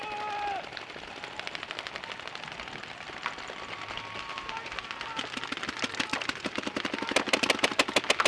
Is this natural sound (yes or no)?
yes